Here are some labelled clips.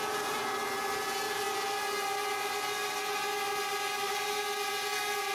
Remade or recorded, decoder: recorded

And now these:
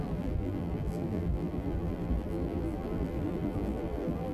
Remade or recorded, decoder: remade, vocoder, BigVGAN v2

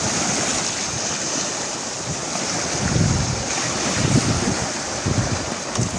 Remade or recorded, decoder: recorded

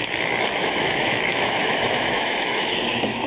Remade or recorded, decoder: remade, autoencoder, DAC-VAE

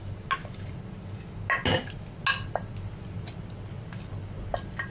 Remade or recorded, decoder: recorded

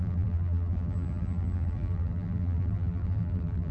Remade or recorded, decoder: remade, vocoder, BigVGAN v2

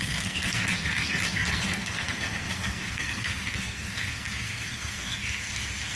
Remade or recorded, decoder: remade, codec, SNAC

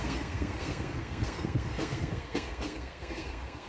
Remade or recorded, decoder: remade, codec, SNAC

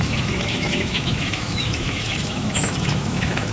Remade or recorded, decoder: remade, autoencoder, DAC-VAE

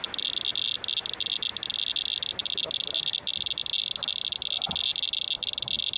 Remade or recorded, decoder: recorded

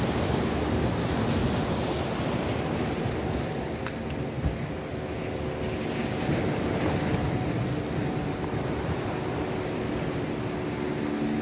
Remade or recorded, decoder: recorded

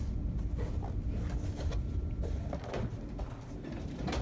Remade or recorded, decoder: recorded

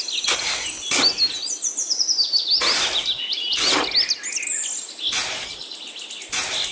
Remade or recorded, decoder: recorded